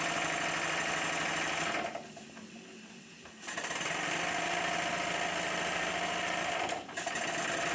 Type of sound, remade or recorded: recorded